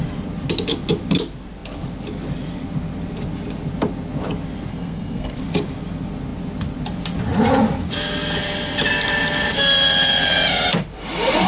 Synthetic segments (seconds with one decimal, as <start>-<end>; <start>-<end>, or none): 4.7-5.3

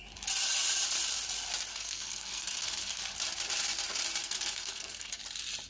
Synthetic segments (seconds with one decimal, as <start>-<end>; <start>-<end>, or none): 1.7-3.0; 4.2-5.2

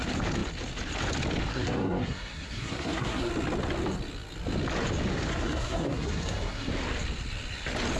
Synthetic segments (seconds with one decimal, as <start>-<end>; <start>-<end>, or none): 1.5-3.3; 5.3-6.7

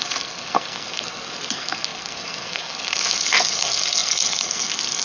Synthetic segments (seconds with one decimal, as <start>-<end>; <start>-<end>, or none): 0.0-5.0

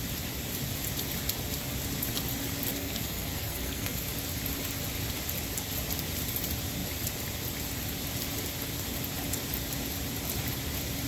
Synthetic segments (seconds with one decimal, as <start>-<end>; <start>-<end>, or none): 2.7-4.1